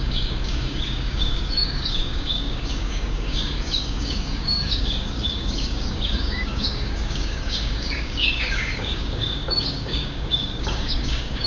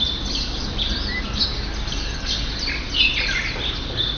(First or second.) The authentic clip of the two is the second